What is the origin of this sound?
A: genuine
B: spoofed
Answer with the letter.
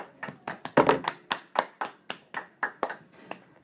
A